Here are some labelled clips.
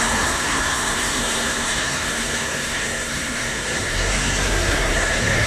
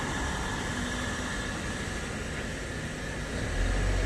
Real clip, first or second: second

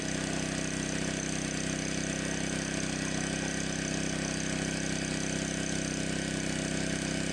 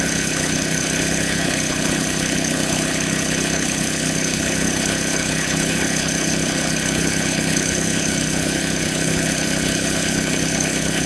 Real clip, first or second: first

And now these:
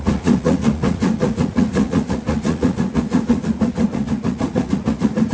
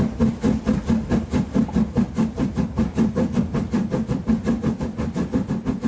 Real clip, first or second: second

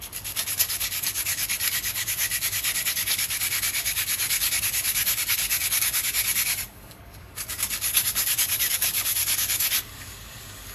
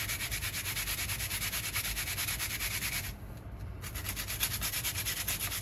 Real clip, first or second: second